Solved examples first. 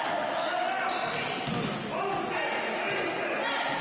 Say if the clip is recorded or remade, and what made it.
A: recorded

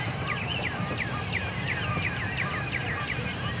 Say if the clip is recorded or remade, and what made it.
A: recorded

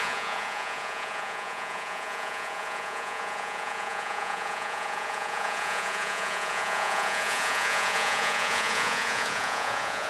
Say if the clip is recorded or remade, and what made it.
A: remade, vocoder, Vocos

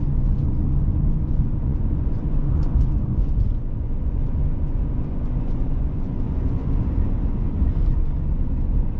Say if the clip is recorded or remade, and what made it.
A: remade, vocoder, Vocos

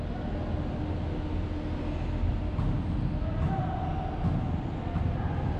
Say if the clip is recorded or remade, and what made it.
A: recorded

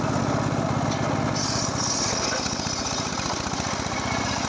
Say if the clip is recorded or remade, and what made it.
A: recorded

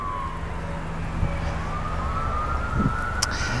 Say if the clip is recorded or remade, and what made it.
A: recorded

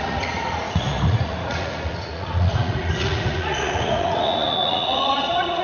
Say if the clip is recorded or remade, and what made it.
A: remade, vocoder, Vocos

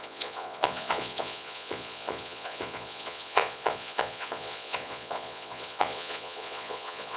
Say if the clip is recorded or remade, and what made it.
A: remade, vocoder, Vocos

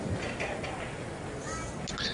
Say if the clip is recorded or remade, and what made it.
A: recorded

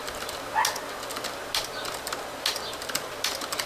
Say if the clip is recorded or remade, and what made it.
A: recorded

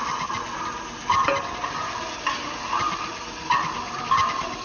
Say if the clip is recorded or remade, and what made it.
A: recorded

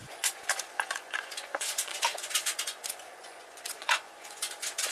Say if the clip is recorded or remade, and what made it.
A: remade, vocoder, Vocos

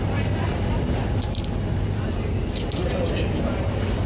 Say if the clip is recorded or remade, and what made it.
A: recorded